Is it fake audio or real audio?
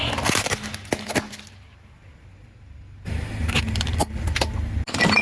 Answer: real